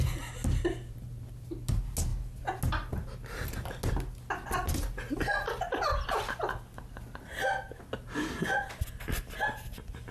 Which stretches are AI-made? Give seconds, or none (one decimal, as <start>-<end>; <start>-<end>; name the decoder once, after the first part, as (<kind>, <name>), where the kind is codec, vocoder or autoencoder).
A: none